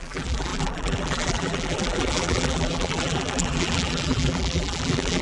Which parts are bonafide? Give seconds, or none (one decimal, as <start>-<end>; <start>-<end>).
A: none